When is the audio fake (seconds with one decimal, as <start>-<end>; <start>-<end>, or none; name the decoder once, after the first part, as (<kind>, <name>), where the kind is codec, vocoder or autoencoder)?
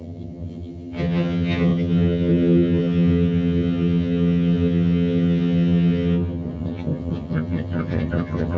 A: 0.0-8.6 (vocoder, HiFi-GAN)